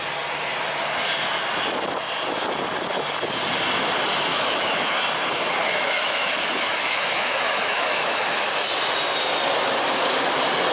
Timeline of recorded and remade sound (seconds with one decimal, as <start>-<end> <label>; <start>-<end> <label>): 0.0-4.3 recorded; 4.3-5.0 remade; 5.0-5.6 recorded; 5.6-8.4 remade; 8.4-10.7 recorded